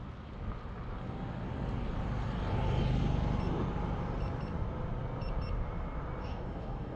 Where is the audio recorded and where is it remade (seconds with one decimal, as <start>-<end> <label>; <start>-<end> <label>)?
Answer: 0.0-6.2 recorded; 6.2-7.0 remade